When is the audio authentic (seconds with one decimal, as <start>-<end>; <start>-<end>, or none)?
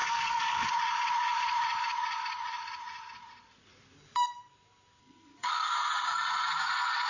0.7-5.0; 5.7-7.1